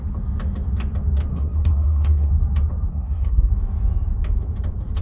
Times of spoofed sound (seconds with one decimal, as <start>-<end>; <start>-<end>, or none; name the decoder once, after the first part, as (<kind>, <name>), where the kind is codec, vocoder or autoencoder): 1.3-2.3 (codec, SNAC); 2.9-3.5